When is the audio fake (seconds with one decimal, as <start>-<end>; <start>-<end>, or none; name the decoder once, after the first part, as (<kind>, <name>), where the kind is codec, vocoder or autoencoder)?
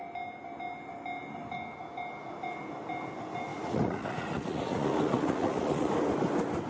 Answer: 3.5-5.9 (vocoder, Vocos)